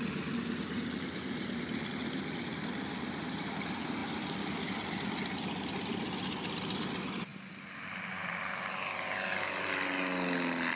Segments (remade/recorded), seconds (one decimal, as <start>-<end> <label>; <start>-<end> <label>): 0.0-10.8 recorded